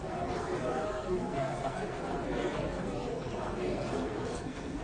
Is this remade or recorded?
remade